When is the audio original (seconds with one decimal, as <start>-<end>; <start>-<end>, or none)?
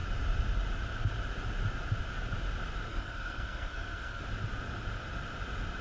0.0-2.9; 4.2-5.8